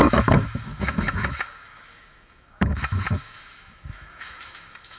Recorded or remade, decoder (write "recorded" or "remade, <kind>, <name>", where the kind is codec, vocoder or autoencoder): remade, autoencoder, DAC-VAE